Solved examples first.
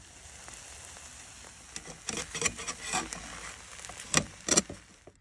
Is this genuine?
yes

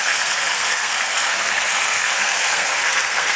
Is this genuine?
no